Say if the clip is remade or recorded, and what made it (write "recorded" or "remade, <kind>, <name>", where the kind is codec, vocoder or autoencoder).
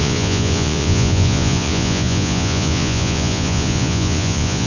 remade, vocoder, Vocos